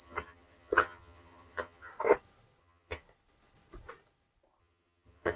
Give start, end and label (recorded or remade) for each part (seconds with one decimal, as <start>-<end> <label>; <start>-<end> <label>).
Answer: 0.0-1.9 remade; 1.9-2.6 recorded; 2.6-3.0 remade; 3.0-4.6 recorded; 4.6-5.4 remade